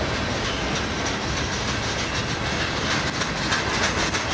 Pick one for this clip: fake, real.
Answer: real